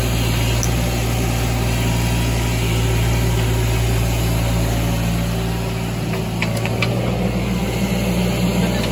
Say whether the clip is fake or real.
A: real